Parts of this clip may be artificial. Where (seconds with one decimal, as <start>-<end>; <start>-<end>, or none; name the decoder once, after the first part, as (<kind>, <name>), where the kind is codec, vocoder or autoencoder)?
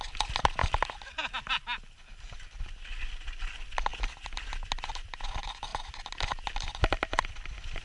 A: none